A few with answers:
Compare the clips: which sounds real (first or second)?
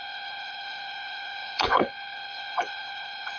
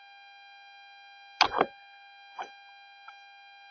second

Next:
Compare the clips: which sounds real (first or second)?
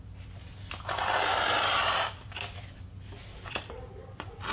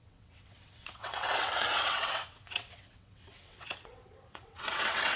first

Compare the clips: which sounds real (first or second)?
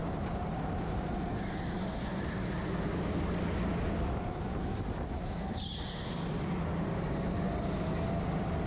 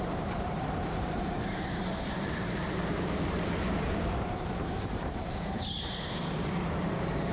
first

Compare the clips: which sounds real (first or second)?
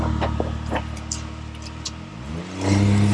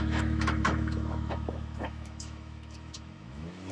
first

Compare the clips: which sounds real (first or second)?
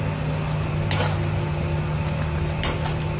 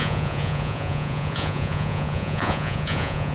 first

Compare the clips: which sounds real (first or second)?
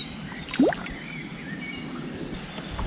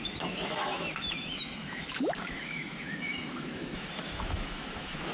first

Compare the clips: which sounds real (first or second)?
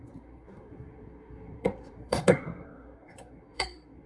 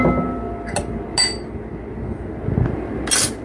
second